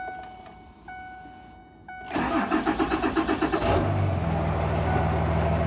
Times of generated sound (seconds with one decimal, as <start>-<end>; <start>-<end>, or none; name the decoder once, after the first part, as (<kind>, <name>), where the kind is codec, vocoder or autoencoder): none